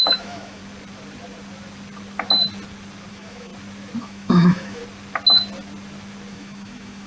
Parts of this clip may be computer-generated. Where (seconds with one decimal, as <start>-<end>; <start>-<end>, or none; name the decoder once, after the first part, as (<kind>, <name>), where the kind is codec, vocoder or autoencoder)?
0.0-0.6 (autoencoder, DAC-VAE); 3.1-3.5; 4.0-4.8; 6.3-7.1